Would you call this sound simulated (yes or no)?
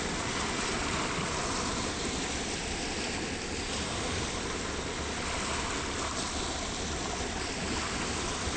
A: no